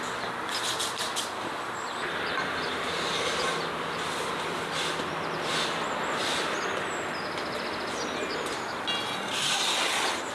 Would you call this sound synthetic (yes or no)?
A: no